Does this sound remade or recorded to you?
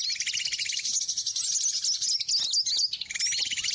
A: recorded